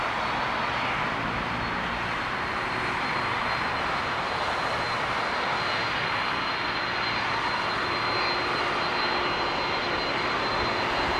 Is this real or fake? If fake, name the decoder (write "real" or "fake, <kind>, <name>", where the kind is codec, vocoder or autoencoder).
real